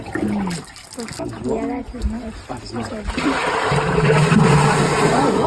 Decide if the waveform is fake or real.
real